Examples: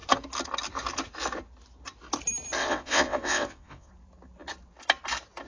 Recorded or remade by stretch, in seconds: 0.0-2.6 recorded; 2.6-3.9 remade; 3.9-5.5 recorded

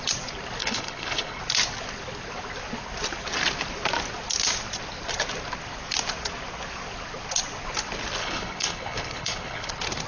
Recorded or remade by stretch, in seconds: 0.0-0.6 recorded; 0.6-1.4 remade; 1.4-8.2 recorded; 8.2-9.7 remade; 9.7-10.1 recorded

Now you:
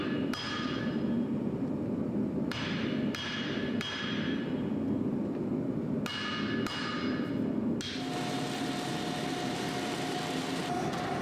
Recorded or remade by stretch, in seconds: 0.0-5.5 remade; 5.5-10.6 recorded; 10.6-11.2 remade

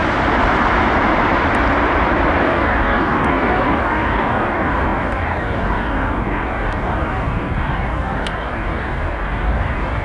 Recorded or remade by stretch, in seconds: 0.0-2.4 recorded; 2.4-10.0 remade